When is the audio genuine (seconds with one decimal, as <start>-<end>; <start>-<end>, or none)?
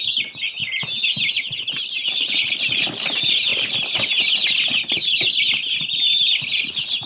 0.6-2.0; 3.5-5.8